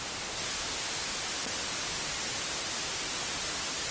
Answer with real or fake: real